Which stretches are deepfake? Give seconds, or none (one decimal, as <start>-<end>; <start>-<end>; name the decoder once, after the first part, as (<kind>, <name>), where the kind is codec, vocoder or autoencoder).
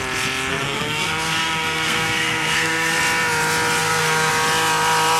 0.5-3.0 (codec, SNAC); 3.8-4.3